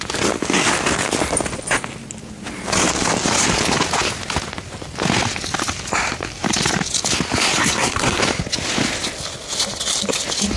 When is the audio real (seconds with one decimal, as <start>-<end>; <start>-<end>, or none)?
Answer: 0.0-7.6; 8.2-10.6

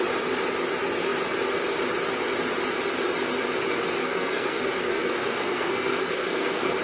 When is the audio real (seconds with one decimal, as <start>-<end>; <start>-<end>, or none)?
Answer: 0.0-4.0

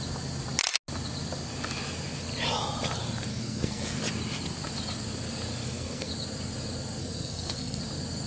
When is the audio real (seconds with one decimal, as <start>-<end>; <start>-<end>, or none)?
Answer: 0.0-3.3; 4.0-5.6; 6.1-7.0; 7.8-8.3

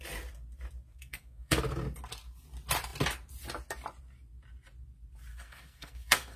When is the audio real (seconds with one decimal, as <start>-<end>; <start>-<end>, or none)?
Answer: 0.0-0.9; 1.6-5.3

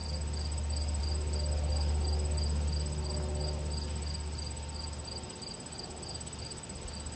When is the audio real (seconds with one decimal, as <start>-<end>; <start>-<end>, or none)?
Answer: 0.0-7.2

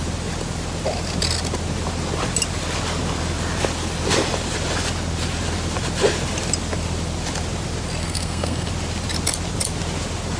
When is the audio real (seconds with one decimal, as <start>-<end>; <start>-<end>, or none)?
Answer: 0.0-8.0; 8.7-10.4

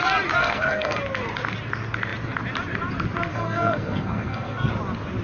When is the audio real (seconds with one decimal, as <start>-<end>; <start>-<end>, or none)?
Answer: 0.0-0.4; 1.0-3.3; 4.7-5.2

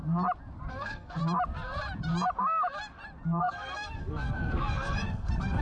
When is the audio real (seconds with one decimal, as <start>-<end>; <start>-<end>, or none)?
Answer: 0.0-0.7; 1.2-3.4